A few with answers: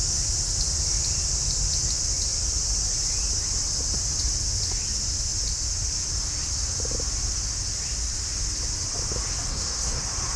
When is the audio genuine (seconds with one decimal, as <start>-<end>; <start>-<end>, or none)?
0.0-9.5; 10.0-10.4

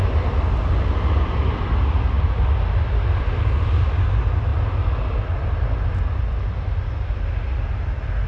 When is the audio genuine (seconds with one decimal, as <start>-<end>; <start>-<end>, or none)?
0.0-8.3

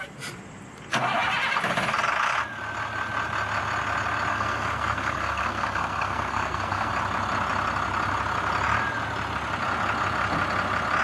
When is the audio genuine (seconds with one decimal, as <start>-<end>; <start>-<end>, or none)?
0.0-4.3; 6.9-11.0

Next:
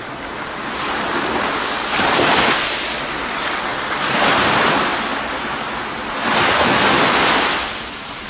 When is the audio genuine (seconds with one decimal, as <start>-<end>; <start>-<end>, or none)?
0.0-8.3

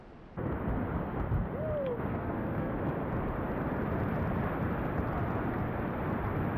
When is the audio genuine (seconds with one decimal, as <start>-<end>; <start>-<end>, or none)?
0.0-2.1; 2.7-6.6

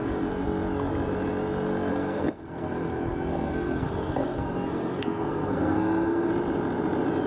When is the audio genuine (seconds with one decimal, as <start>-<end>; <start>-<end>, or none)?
0.0-1.9; 6.3-7.3